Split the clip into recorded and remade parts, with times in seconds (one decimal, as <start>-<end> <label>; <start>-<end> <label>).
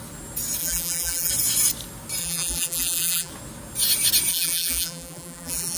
0.0-0.6 recorded; 0.6-1.3 remade; 1.3-2.2 recorded; 2.2-3.3 remade; 3.3-4.3 recorded; 4.3-5.8 remade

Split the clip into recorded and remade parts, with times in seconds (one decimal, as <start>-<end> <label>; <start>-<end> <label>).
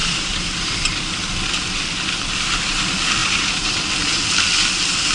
0.0-1.1 remade; 1.1-3.2 recorded; 3.2-3.9 remade; 3.9-5.1 recorded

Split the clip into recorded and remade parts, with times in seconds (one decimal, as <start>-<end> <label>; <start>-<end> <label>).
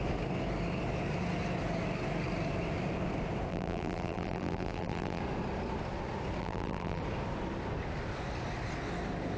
0.0-3.5 recorded; 3.5-5.2 remade; 5.2-6.4 recorded; 6.4-7.0 remade; 7.0-9.4 recorded